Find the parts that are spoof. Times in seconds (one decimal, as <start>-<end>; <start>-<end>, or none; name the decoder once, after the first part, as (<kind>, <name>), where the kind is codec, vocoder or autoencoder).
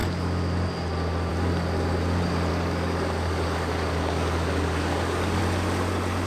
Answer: 2.5-5.4 (codec, DAC)